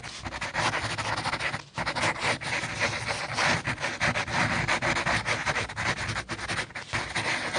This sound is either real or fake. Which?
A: real